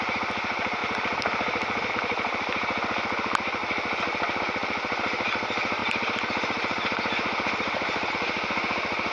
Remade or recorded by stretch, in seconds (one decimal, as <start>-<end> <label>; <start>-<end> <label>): 0.0-3.6 recorded; 3.6-4.4 remade; 4.4-5.8 recorded; 5.8-8.1 remade; 8.1-9.1 recorded